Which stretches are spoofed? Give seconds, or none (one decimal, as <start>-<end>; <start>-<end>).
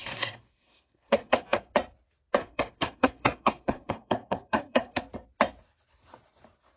0.0-1.7; 2.4-5.0